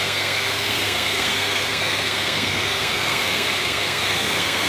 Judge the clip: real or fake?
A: fake